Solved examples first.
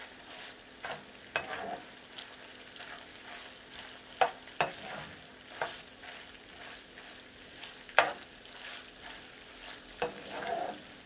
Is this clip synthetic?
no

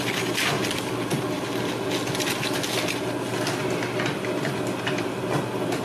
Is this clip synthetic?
no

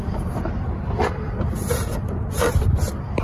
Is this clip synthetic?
yes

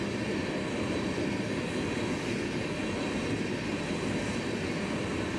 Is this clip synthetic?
no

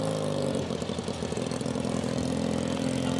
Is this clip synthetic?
yes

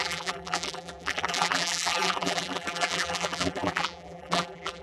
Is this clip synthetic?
yes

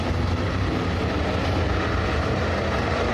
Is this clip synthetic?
yes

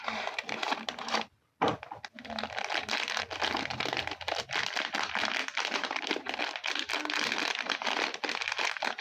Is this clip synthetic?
yes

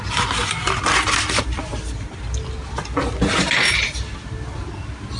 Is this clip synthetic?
no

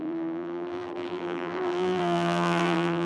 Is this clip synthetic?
yes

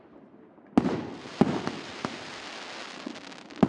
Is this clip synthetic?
no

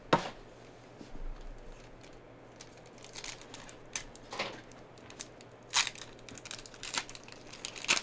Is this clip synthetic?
no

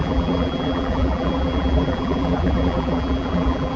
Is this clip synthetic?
yes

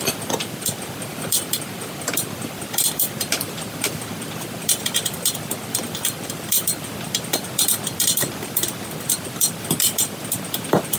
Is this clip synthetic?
yes